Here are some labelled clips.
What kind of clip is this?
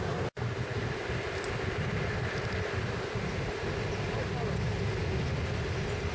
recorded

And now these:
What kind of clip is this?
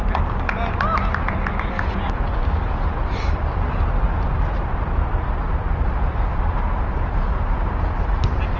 recorded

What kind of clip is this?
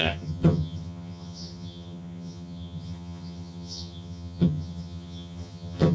remade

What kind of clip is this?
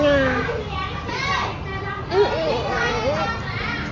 recorded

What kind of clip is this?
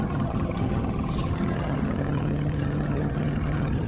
remade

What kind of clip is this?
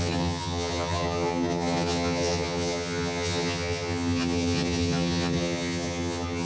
remade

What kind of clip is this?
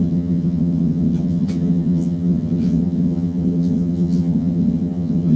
remade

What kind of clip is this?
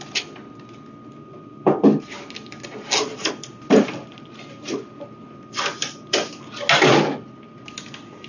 recorded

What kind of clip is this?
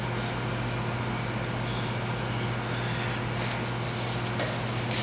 recorded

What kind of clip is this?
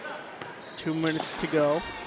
recorded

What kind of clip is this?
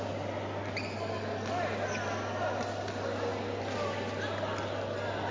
recorded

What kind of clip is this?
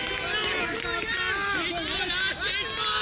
recorded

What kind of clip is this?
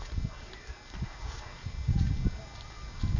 recorded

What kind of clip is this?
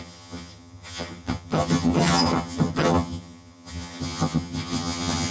remade